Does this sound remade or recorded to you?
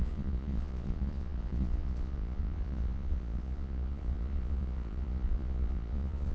remade